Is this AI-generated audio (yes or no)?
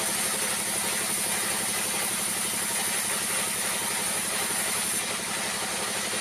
no